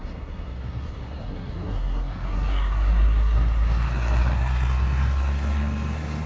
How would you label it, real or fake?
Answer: fake